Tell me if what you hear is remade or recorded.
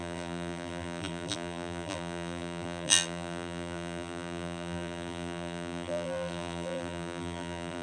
remade